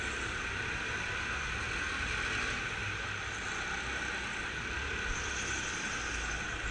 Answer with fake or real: real